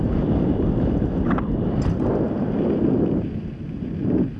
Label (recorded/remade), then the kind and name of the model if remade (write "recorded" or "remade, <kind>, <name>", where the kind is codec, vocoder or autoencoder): recorded